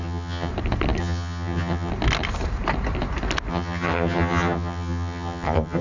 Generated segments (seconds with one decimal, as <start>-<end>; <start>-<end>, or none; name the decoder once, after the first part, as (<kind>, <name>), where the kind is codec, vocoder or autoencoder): 0.0-0.5 (vocoder, HiFi-GAN); 1.0-1.9; 3.5-5.8